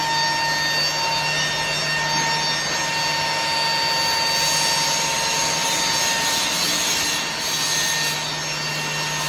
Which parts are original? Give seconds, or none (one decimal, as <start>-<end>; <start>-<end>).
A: 0.0-9.3